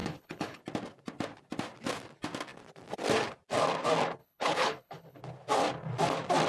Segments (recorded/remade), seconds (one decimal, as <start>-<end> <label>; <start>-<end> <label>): 0.0-0.6 remade; 0.6-4.2 recorded; 4.2-5.2 remade; 5.2-6.5 recorded